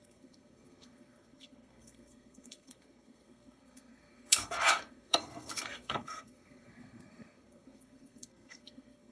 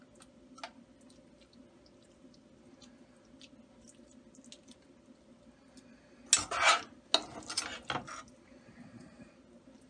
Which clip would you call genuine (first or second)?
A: second